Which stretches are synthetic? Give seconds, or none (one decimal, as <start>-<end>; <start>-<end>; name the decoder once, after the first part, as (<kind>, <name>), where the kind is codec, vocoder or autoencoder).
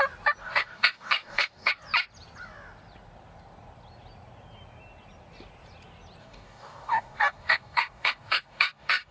0.4-1.7 (codec, DAC); 6.2-9.1